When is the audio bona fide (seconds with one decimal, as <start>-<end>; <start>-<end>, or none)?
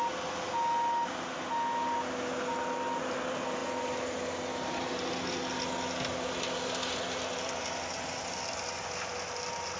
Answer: 0.0-9.8